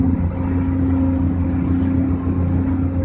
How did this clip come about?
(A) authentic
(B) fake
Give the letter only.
A